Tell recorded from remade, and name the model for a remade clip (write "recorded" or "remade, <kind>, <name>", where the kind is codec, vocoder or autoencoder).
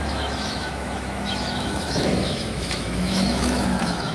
remade, autoencoder, DAC-VAE